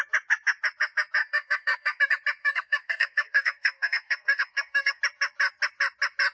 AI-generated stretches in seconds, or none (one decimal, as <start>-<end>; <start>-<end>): 1.2-2.0; 2.4-5.0